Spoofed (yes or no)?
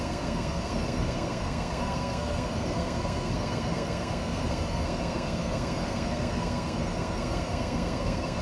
yes